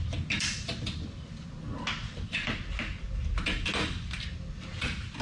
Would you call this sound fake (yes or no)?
no